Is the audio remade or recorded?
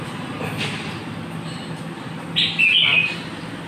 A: recorded